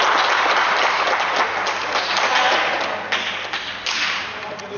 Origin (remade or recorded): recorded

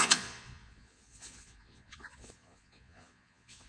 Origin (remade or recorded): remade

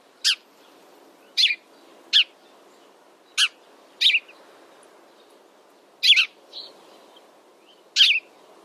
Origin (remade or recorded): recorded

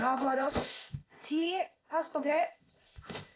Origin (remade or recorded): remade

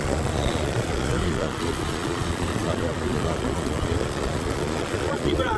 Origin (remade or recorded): remade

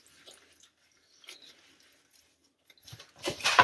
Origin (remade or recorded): recorded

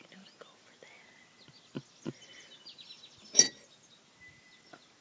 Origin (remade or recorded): recorded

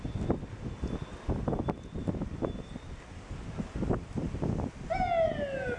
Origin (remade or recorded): recorded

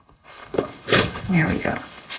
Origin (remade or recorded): remade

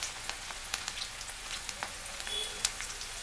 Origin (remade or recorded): remade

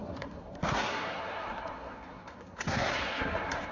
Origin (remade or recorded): remade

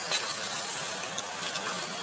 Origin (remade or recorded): recorded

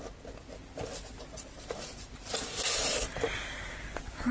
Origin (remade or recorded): recorded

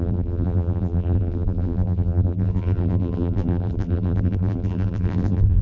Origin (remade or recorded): remade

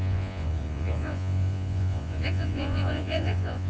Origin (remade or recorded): remade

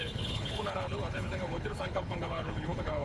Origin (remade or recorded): remade